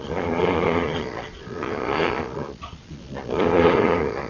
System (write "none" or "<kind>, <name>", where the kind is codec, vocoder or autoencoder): vocoder, Vocos